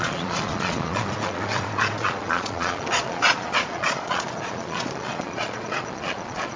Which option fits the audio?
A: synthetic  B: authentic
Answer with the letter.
A